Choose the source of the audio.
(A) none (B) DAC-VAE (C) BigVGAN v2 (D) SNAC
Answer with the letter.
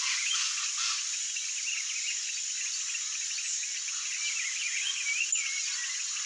A